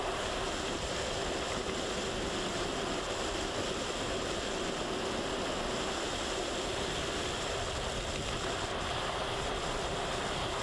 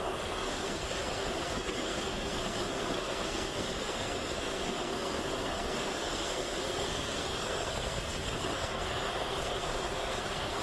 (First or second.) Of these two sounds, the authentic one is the first